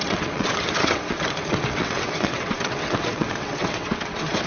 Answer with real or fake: fake